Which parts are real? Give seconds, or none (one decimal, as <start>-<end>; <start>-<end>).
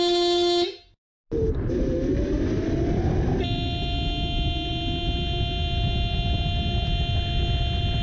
0.0-8.0